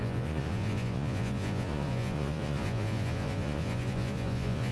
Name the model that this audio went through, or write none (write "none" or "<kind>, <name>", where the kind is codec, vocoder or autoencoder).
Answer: vocoder, Vocos